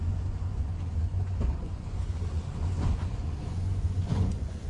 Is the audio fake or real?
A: fake